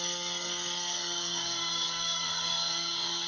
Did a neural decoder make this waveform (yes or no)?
yes